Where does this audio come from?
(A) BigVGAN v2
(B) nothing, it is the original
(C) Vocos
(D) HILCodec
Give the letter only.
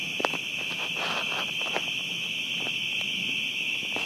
B